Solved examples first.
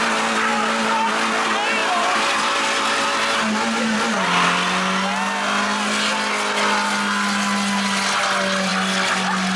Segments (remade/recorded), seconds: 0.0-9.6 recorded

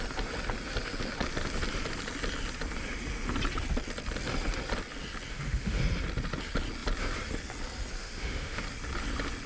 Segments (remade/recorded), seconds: 0.0-5.3 recorded; 5.3-5.8 remade; 5.8-8.0 recorded; 8.0-8.6 remade; 8.6-9.5 recorded

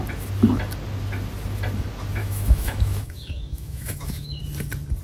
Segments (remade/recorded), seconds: 0.0-2.2 recorded; 2.2-4.4 remade; 4.4-5.0 recorded

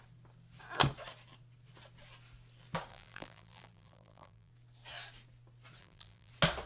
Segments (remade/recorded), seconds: 0.0-2.9 recorded; 2.9-4.5 remade; 4.5-5.8 recorded; 5.8-6.3 remade; 6.3-6.7 recorded

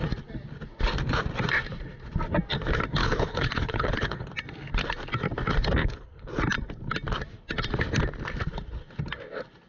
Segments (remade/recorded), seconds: 0.0-3.0 recorded; 3.0-4.3 remade; 4.3-5.8 recorded; 5.8-6.3 remade; 6.3-9.7 recorded